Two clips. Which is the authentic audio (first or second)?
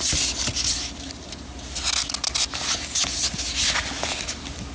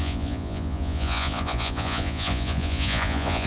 first